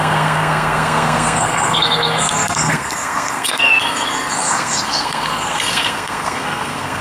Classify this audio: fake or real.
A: fake